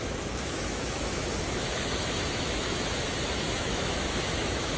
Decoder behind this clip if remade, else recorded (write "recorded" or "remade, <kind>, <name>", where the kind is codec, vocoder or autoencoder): remade, autoencoder, DAC-VAE